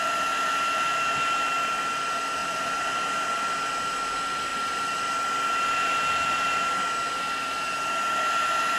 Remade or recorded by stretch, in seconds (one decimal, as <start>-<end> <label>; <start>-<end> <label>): 0.0-2.4 recorded; 2.4-3.6 remade; 3.6-8.8 recorded

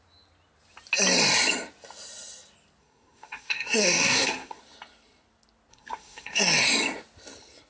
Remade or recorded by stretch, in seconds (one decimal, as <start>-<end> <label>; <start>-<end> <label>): 0.0-2.8 recorded; 2.8-4.6 remade; 4.6-5.7 recorded; 5.7-6.4 remade; 6.4-7.7 recorded

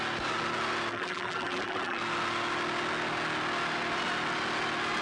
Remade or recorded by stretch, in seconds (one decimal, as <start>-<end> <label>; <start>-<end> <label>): 0.0-0.9 recorded; 0.9-2.0 remade; 2.0-5.0 recorded

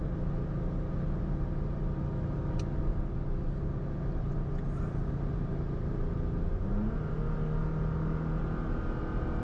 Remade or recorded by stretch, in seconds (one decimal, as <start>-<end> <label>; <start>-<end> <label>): 0.0-9.4 recorded

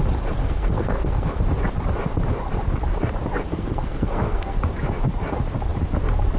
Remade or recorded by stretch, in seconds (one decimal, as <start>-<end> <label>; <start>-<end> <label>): 0.0-0.4 recorded; 0.4-1.4 remade; 1.4-3.5 recorded; 3.5-4.6 remade; 4.6-6.4 recorded